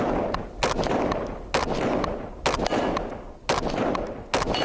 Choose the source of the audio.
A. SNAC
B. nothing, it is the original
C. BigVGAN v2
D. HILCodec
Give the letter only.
B